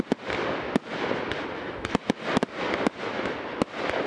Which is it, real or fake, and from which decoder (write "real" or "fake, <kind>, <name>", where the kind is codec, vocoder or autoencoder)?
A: real